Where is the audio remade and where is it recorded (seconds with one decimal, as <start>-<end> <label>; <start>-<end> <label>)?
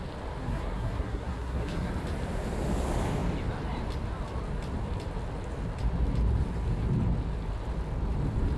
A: 0.0-0.4 recorded; 0.4-1.9 remade; 1.9-8.6 recorded